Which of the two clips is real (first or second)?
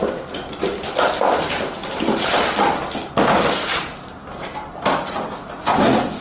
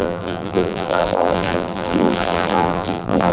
first